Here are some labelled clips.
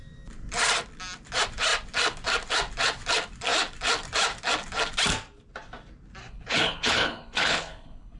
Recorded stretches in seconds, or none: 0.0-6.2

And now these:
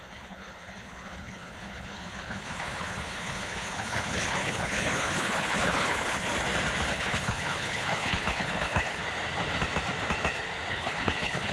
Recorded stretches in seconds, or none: 6.3-6.9; 9.0-10.7

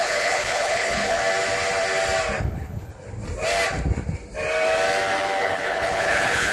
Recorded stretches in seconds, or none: 1.2-2.4; 2.9-5.4

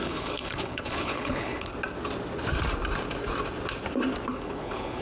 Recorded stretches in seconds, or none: 1.7-4.3